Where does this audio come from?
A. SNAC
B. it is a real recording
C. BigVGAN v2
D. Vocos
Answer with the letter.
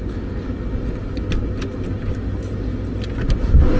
B